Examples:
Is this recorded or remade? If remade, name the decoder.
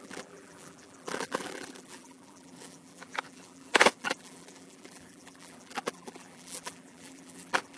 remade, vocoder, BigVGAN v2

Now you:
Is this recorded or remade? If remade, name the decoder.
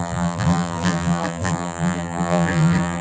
remade, vocoder, BigVGAN v2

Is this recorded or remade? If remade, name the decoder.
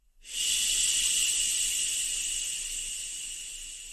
recorded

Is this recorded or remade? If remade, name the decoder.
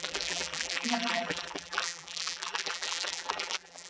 remade, vocoder, BigVGAN v2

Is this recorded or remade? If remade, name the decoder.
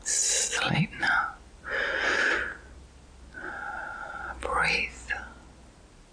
recorded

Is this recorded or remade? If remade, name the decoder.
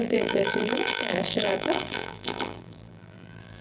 remade, vocoder, BigVGAN v2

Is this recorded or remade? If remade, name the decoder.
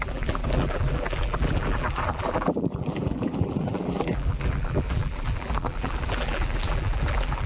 remade, vocoder, BigVGAN v2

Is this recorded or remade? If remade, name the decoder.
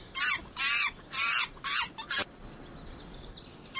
recorded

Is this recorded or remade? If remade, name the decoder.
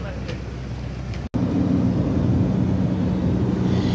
recorded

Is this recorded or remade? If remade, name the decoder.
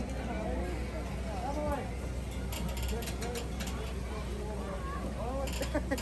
recorded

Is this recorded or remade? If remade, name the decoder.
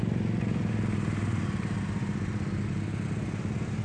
recorded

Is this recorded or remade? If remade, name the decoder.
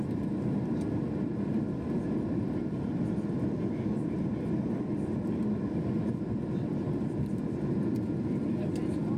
remade, vocoder, BigVGAN v2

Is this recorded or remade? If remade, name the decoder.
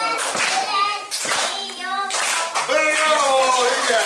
remade, vocoder, BigVGAN v2